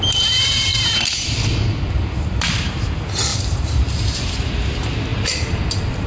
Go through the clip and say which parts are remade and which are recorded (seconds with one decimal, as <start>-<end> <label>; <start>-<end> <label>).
0.0-0.7 remade; 0.7-1.9 recorded; 1.9-6.1 remade